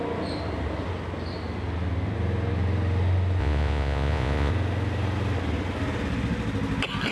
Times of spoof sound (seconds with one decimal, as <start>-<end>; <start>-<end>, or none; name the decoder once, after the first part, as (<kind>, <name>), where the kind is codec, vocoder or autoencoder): 3.4-4.5 (vocoder, Vocos)